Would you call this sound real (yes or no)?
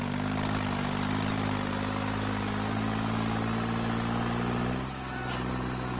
yes